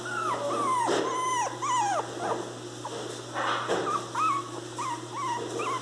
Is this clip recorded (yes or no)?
yes